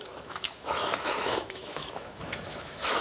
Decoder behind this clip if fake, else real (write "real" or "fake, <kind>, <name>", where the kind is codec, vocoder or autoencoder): fake, autoencoder, DAC-VAE